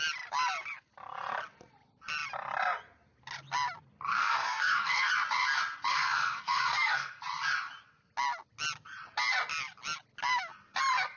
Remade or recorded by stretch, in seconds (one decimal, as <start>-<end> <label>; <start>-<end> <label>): 0.0-4.2 recorded; 4.2-5.1 remade; 5.1-5.9 recorded; 5.9-7.2 remade; 7.2-11.2 recorded